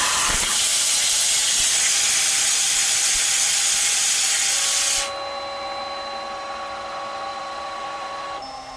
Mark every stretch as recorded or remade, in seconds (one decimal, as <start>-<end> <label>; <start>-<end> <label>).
0.0-7.3 recorded; 7.3-8.1 remade; 8.1-8.8 recorded